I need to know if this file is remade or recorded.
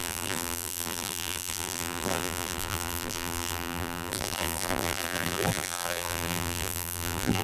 remade